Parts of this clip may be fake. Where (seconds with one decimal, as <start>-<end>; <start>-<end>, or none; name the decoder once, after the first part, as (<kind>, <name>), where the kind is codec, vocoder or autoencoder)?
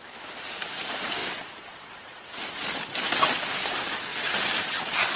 none